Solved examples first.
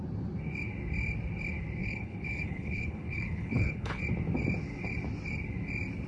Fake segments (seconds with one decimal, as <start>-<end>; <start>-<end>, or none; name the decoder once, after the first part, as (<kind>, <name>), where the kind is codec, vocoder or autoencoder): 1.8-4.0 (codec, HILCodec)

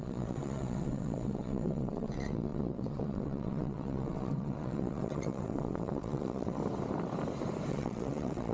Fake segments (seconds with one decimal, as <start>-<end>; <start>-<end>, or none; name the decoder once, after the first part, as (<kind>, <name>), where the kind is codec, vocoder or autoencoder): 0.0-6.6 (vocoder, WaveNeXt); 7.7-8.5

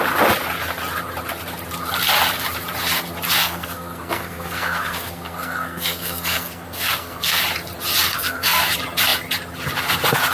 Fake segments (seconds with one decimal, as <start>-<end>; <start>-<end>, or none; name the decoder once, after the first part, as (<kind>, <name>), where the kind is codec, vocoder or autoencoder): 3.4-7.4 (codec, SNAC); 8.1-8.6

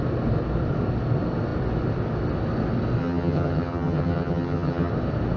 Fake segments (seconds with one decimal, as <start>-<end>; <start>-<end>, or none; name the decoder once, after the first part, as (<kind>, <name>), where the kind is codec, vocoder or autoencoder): 3.0-4.9 (vocoder, HiFi-GAN)